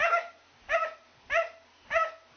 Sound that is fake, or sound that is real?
real